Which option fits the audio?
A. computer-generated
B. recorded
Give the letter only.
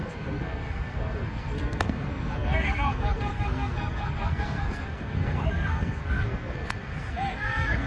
A